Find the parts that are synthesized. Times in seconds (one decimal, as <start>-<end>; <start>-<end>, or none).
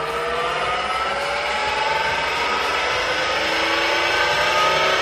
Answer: none